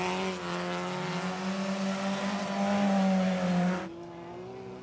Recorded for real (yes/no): yes